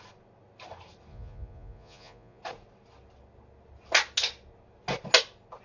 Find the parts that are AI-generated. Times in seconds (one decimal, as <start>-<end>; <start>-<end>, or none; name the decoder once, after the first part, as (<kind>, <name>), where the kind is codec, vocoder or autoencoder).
1.1-2.4 (vocoder, Vocos)

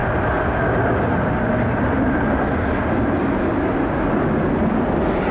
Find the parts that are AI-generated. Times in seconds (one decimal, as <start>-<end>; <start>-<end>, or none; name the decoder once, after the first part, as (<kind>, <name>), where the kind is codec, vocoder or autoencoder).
none